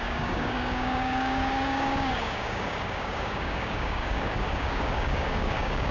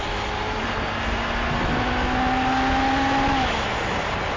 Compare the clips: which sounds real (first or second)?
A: second